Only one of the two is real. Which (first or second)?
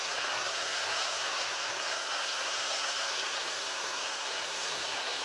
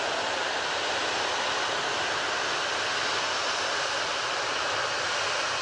second